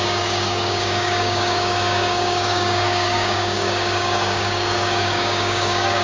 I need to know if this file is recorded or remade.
remade